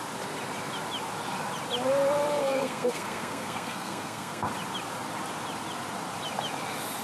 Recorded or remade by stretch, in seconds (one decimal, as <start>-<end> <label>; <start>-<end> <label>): 0.0-2.4 recorded; 2.4-4.5 remade; 4.5-7.0 recorded